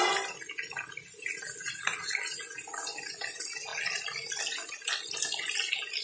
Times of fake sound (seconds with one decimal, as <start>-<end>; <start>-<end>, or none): none